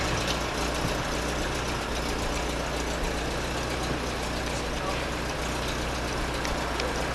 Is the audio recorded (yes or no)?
yes